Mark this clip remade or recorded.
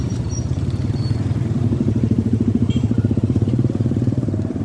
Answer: remade